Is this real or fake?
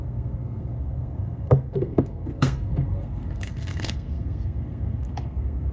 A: fake